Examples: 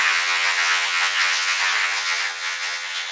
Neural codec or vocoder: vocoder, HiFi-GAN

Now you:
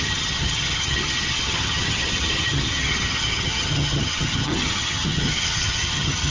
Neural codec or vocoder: vocoder, HiFi-GAN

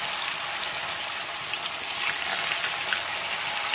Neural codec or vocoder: none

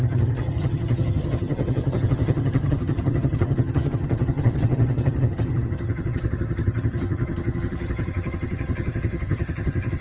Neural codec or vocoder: vocoder, HiFi-GAN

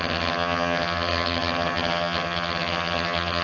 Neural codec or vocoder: vocoder, HiFi-GAN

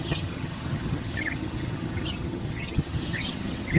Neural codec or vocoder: vocoder, HiFi-GAN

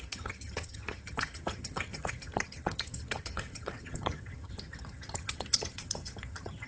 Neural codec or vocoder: vocoder, HiFi-GAN